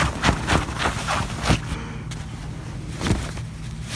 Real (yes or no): yes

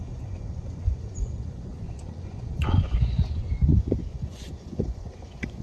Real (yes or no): no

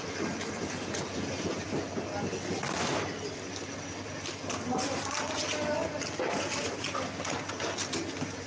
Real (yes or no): yes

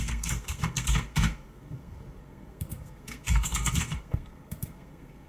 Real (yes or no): no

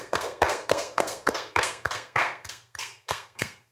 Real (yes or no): no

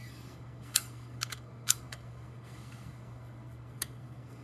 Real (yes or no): no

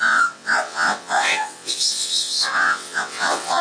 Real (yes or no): no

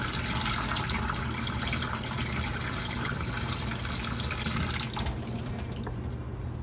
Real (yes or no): yes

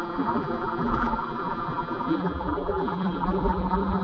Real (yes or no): no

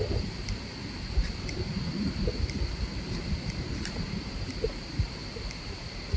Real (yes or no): no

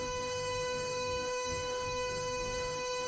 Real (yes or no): no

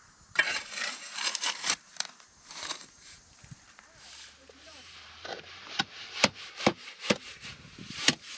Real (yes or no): no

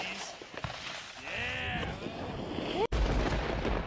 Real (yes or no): yes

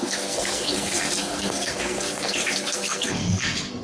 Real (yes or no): no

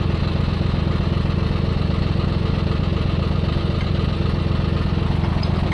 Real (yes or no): yes